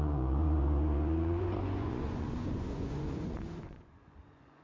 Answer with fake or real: fake